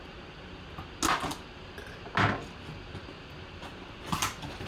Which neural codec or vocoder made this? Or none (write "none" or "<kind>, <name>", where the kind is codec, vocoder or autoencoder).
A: none